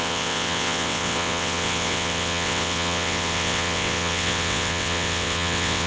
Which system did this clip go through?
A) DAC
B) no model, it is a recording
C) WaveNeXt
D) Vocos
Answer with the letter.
C